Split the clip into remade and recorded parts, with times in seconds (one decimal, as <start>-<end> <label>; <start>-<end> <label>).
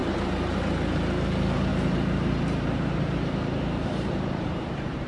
0.0-0.6 remade; 0.6-1.7 recorded; 1.7-5.1 remade